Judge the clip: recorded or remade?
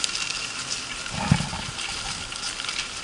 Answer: recorded